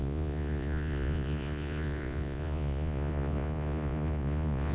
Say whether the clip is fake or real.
fake